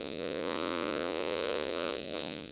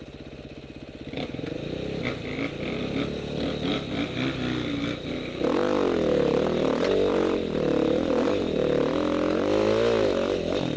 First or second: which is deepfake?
first